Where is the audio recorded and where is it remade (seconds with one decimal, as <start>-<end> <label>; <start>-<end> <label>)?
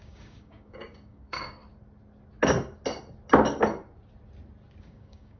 0.0-1.6 remade; 1.6-4.8 recorded; 4.8-5.4 remade